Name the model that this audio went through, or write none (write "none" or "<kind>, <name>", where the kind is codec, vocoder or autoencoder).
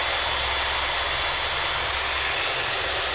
none